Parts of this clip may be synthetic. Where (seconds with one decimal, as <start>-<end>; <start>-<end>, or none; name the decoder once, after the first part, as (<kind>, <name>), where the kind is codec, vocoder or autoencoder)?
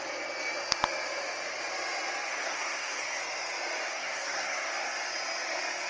2.3-3.2 (codec, SNAC); 3.9-4.7